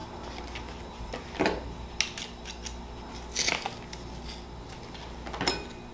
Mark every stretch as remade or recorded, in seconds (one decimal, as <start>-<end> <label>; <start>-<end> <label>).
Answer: 0.0-5.9 recorded